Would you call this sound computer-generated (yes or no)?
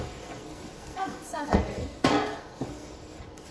yes